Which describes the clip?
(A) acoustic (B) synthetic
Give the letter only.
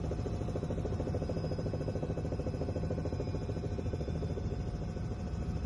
B